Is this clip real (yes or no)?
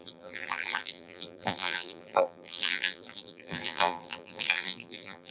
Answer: no